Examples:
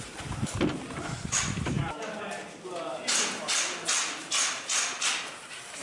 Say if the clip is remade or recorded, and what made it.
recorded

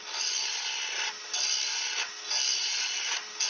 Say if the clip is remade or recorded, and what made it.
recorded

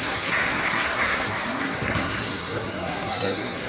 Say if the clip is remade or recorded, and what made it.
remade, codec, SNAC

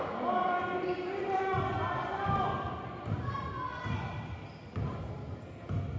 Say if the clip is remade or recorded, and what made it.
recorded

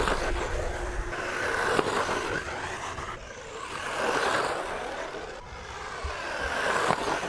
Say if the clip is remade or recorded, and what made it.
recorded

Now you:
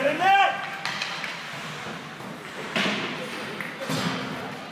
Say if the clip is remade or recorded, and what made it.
recorded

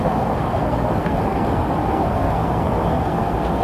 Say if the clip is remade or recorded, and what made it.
remade, codec, SNAC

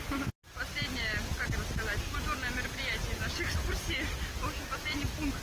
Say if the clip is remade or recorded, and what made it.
recorded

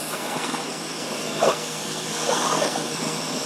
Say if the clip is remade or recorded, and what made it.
remade, codec, SNAC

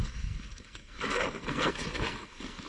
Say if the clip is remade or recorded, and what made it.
remade, codec, SNAC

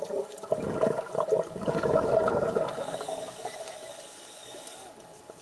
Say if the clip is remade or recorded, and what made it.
remade, codec, DAC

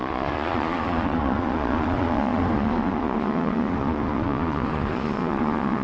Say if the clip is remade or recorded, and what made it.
remade, vocoder, Vocos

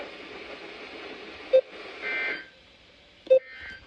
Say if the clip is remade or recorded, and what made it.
recorded